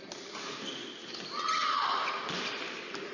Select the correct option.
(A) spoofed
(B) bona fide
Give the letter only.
B